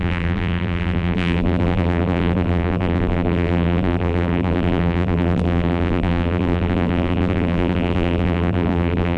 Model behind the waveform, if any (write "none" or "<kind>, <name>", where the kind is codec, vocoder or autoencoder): vocoder, BigVGAN v2